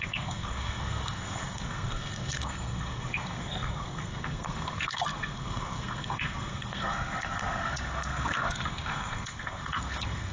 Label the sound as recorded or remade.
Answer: remade